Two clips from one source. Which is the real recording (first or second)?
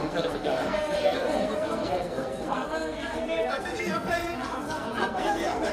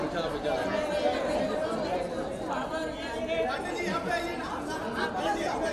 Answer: second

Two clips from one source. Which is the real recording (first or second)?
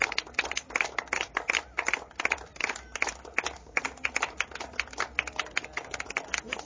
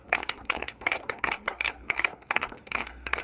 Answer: first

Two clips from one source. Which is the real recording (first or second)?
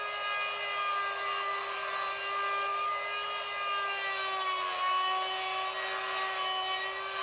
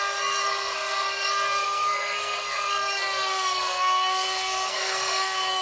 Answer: first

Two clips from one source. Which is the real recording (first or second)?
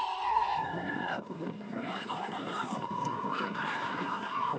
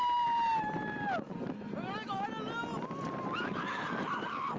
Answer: second